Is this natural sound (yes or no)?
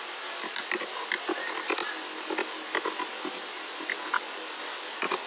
yes